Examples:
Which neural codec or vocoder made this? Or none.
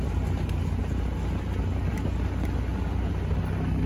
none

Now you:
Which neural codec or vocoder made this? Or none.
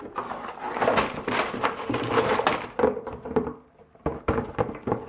none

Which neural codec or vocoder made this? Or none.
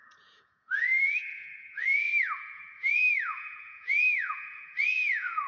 vocoder, Vocos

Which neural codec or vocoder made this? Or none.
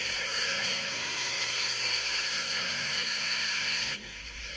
codec, SNAC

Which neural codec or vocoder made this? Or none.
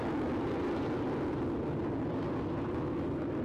none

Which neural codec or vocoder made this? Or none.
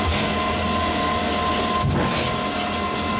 none